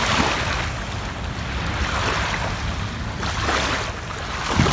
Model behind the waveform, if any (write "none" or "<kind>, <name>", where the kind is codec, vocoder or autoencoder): none